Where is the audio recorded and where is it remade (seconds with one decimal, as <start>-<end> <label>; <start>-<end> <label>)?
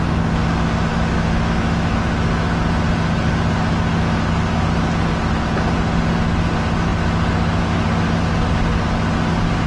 0.0-0.9 recorded; 0.9-1.6 remade; 1.6-9.7 recorded